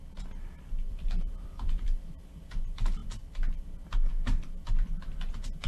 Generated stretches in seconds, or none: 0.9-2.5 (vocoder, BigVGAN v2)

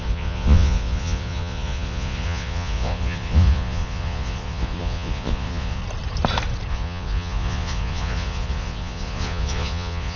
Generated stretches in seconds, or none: 0.0-5.8 (vocoder, Vocos); 6.7-10.2

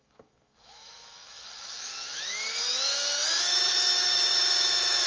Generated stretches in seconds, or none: 0.0-5.1 (autoencoder, DAC-VAE)

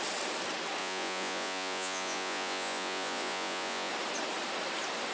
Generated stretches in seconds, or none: 0.8-3.9 (vocoder, Vocos)

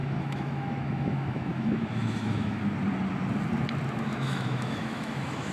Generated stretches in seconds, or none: 0.0-2.6 (autoencoder, DAC-VAE); 4.1-5.5

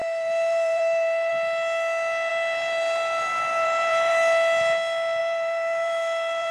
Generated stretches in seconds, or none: 0.0-1.3 (vocoder, BigVGAN v2); 2.3-4.1; 5.2-6.5

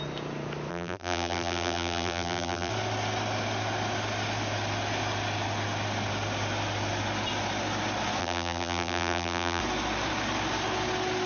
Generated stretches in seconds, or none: 0.7-2.7 (vocoder, BigVGAN v2); 8.2-9.6